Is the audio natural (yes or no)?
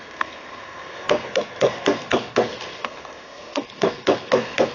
no